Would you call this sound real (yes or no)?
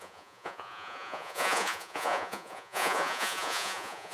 no